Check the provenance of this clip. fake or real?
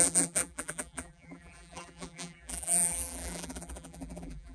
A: fake